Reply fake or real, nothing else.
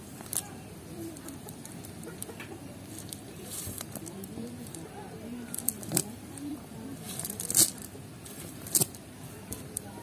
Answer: fake